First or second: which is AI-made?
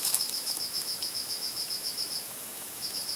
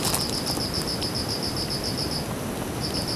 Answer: first